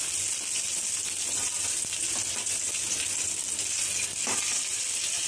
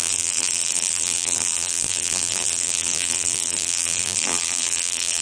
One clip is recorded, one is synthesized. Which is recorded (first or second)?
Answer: first